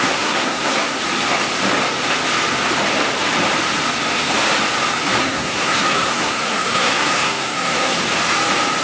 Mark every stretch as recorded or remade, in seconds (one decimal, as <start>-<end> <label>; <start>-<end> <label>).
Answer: 0.0-1.0 remade; 1.0-5.2 recorded; 5.2-8.0 remade; 8.0-8.8 recorded